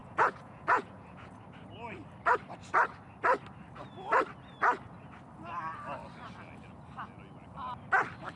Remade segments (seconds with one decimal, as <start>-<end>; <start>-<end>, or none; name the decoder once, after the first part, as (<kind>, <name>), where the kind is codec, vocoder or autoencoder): 0.0-1.4 (vocoder, Vocos)